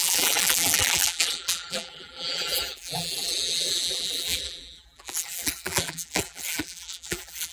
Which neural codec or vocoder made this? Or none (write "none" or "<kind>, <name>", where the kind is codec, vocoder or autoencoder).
vocoder, BigVGAN v2